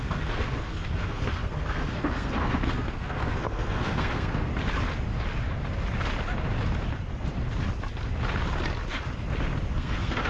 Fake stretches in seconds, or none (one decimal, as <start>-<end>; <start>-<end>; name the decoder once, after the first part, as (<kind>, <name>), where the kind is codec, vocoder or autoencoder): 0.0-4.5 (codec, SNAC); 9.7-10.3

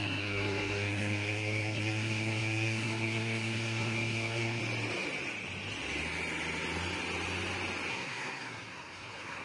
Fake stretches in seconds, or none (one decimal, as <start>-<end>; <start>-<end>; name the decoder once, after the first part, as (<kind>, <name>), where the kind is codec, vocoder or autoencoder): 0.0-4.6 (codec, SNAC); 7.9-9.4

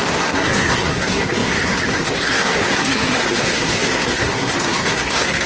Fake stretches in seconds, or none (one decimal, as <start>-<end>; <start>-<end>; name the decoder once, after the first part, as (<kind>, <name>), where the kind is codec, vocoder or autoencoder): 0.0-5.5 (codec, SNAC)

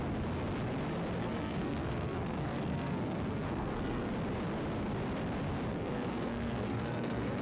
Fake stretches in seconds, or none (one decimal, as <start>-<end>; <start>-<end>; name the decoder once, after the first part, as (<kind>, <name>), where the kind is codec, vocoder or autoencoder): 1.2-4.1 (codec, SNAC); 5.7-7.4

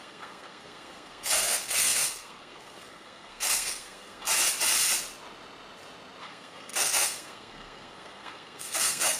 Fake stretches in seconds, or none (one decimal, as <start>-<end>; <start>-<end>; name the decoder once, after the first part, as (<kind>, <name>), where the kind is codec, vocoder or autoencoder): 0.0-4.3 (codec, SNAC); 6.2-9.2

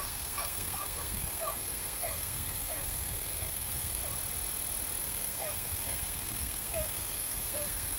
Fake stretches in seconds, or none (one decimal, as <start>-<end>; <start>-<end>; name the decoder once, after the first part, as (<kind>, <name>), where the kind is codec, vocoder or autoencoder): 0.0-4.0 (codec, SNAC); 5.0-8.0

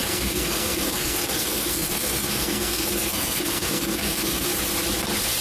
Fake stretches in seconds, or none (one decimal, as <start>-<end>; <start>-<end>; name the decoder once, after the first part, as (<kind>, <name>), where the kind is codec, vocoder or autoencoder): 0.0-4.5 (codec, SNAC)